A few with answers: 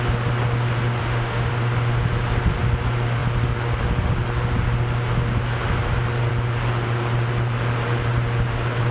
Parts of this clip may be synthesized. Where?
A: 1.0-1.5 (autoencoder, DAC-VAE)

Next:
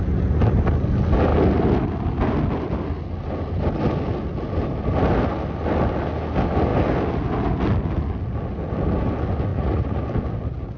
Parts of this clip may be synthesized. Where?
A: 9.5-10.0 (vocoder, Vocos)

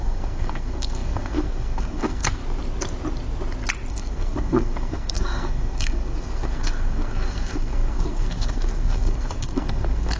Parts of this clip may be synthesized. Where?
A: 0.0-2.4 (codec, SNAC); 3.9-10.2

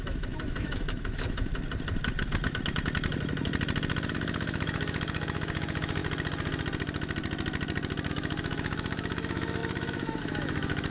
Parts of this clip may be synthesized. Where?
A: 0.0-1.5 (autoencoder, DAC-VAE); 4.1-6.0; 8.1-10.9

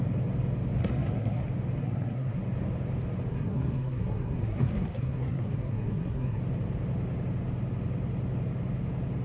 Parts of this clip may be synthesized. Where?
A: 0.8-1.4 (codec, SNAC); 1.8-2.4; 3.3-6.4